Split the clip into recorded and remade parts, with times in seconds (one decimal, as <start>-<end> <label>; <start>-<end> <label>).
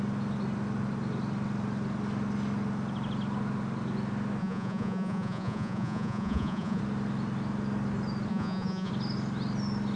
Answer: 0.0-4.4 recorded; 4.4-6.8 remade; 6.8-8.3 recorded; 8.3-8.9 remade; 8.9-10.0 recorded